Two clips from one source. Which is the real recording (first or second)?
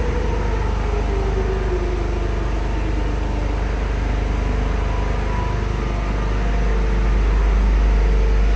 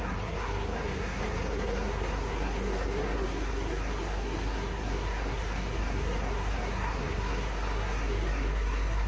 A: first